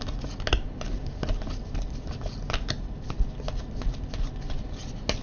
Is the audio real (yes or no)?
yes